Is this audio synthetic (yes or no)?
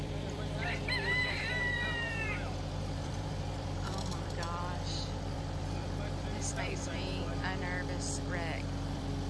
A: yes